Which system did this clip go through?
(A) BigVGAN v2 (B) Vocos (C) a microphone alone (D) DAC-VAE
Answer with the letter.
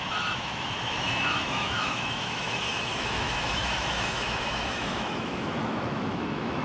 D